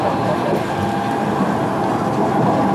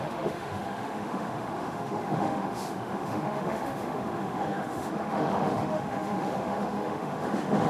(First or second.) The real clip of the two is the first